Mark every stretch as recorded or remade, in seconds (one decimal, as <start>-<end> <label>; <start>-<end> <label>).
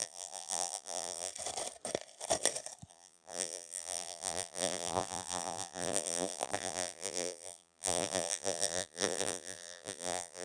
0.0-1.3 remade; 1.3-2.9 recorded; 2.9-10.4 remade